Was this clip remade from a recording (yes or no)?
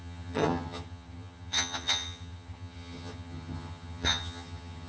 yes